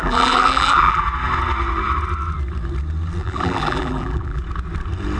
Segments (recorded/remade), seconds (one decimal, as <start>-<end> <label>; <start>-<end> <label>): 0.0-1.0 remade; 1.0-3.2 recorded; 3.2-4.4 remade; 4.4-5.2 recorded